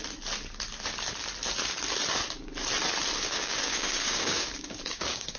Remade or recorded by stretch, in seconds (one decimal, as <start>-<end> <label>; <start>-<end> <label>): 0.0-3.2 recorded; 3.2-5.4 remade